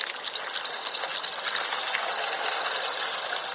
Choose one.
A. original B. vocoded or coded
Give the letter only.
A